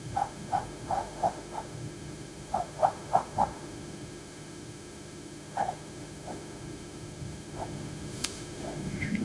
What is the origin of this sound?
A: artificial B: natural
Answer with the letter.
A